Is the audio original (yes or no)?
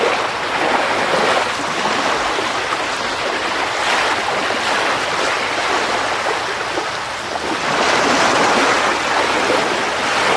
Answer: yes